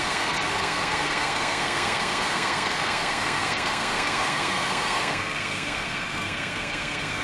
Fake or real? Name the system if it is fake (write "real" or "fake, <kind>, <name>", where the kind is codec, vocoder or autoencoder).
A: fake, codec, SNAC